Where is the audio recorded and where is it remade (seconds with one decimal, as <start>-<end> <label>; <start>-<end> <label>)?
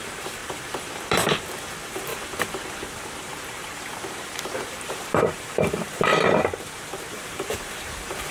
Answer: 0.0-2.1 remade; 2.1-3.2 recorded; 3.2-6.1 remade; 6.1-7.1 recorded; 7.1-8.3 remade